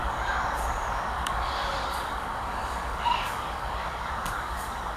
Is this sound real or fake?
fake